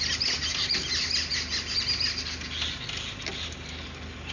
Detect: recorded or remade recorded